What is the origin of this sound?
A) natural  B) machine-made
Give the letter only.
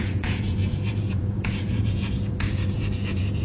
B